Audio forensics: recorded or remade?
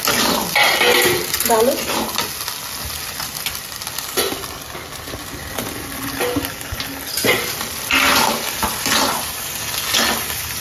recorded